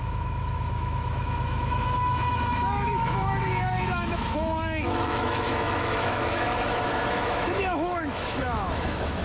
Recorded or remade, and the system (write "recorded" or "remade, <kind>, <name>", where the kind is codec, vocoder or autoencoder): remade, autoencoder, DAC-VAE